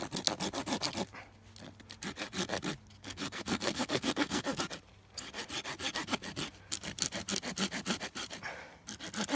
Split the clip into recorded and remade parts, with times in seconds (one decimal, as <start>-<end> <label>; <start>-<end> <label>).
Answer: 0.0-3.0 recorded; 3.0-4.6 remade; 4.6-9.4 recorded